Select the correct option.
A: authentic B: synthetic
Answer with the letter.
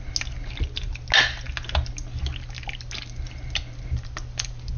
A